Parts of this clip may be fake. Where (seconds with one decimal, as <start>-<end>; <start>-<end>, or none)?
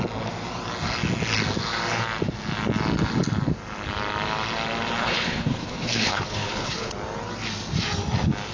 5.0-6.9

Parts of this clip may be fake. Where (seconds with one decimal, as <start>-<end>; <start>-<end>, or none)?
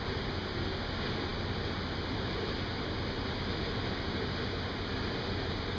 none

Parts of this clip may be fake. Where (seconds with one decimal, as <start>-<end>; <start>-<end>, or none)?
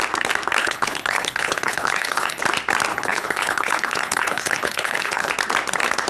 0.6-2.4; 2.9-5.3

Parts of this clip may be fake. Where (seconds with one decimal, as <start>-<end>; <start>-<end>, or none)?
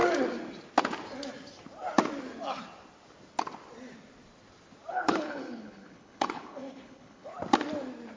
4.9-7.3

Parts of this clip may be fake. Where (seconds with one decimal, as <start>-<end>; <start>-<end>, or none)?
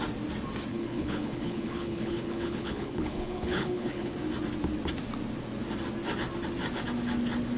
0.7-4.1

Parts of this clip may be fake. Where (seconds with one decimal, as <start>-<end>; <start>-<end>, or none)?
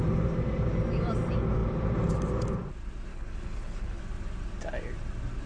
3.1-4.0